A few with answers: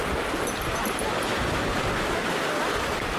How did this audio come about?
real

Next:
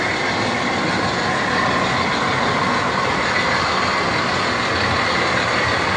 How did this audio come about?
real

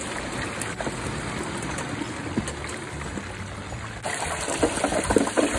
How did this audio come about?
real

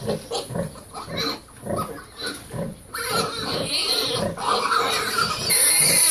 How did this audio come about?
real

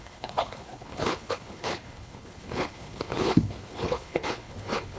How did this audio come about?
fake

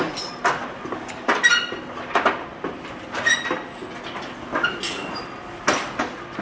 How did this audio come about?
real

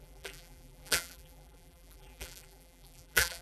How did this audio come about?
fake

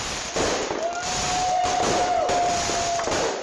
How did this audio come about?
real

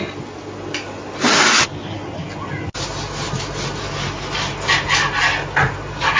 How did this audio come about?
real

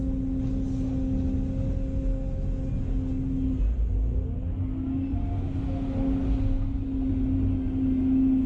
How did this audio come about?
real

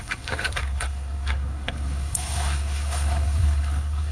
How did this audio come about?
fake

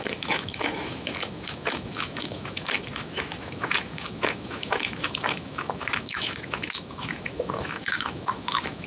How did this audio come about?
fake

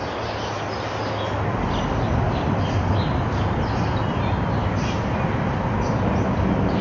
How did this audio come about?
real